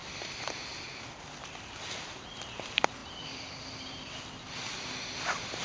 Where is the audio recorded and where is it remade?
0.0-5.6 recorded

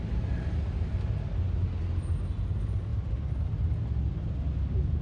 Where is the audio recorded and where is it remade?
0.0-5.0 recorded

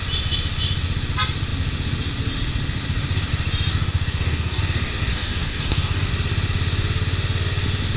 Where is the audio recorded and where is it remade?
0.0-3.7 recorded; 3.7-4.6 remade; 4.6-5.1 recorded; 5.1-6.1 remade; 6.1-8.0 recorded

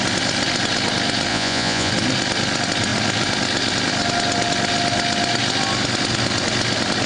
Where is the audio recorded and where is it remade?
0.0-1.3 recorded; 1.3-1.9 remade; 1.9-7.1 recorded

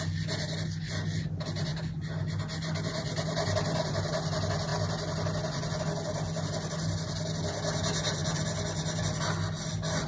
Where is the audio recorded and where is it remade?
0.0-10.1 recorded

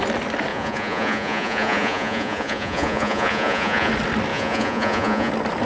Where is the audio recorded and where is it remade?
0.0-0.5 recorded; 0.5-3.9 remade; 3.9-4.3 recorded; 4.3-5.3 remade; 5.3-5.7 recorded

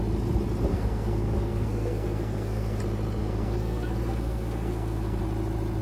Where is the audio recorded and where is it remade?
0.0-0.7 recorded; 0.7-2.8 remade; 2.8-3.2 recorded; 3.2-5.2 remade; 5.2-5.8 recorded